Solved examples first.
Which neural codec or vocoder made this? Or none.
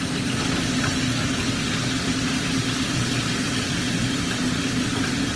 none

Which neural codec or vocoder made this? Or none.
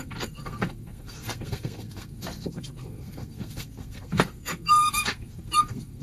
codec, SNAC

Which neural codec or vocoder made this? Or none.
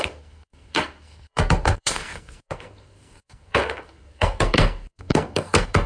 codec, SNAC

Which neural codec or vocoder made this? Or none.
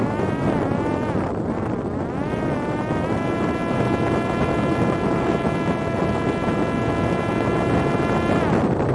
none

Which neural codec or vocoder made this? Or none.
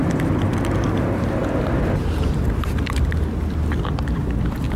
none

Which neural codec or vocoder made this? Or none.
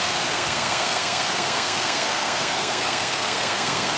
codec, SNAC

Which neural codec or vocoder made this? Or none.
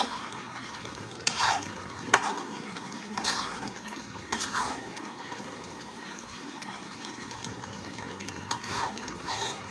codec, SNAC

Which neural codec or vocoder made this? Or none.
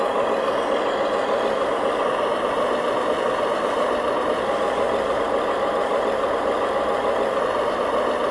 none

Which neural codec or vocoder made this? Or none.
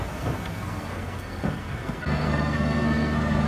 codec, SNAC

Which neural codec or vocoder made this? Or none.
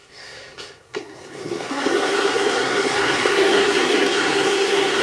codec, SNAC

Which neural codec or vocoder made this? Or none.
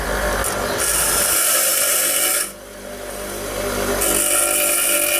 none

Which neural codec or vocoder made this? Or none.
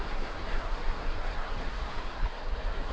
codec, SNAC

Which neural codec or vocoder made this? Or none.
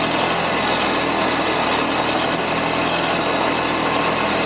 none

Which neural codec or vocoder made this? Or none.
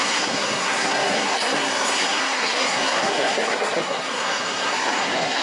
codec, SNAC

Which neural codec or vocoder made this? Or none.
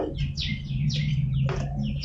none